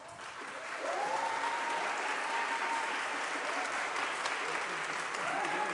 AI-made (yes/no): yes